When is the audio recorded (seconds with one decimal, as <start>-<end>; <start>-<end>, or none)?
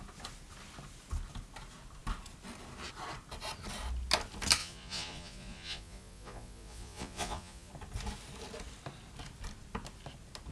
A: 0.0-4.6; 7.7-10.5